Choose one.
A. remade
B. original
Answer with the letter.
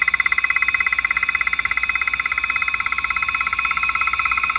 B